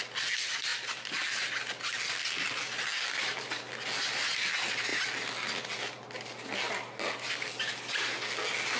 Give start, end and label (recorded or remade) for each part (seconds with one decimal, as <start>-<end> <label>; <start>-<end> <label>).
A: 0.0-8.8 recorded